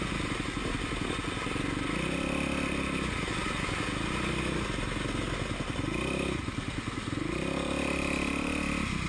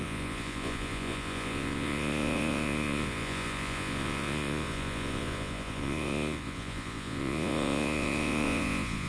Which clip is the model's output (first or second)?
second